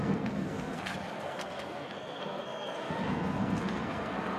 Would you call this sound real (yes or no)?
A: no